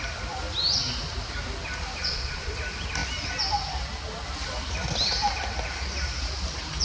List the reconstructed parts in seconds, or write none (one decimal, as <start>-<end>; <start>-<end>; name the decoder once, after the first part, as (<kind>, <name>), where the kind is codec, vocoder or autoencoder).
2.0-2.5 (vocoder, Vocos)